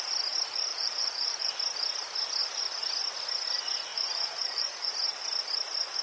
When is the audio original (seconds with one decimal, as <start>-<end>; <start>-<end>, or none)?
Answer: 0.0-0.7; 1.5-3.9; 4.9-6.0